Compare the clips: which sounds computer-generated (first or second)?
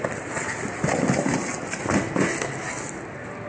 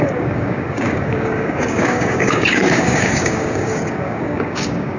second